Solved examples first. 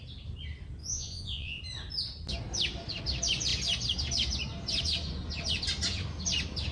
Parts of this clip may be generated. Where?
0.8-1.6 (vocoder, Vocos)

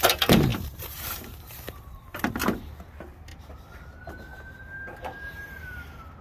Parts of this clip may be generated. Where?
0.5-2.4 (vocoder, BigVGAN v2); 3.3-3.9

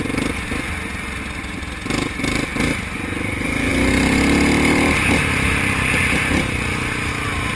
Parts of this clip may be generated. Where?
none